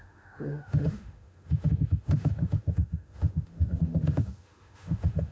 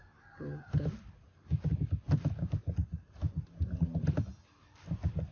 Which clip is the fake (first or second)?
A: first